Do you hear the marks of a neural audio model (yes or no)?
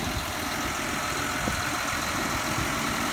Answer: no